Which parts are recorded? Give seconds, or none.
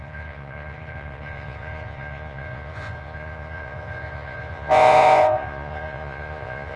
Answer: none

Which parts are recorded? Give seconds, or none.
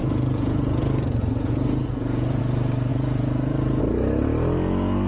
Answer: 2.4-2.9; 3.8-5.1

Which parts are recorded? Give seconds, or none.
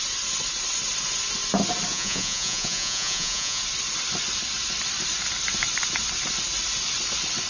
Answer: 0.0-1.9; 3.6-7.5